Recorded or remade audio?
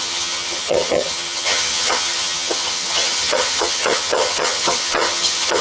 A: remade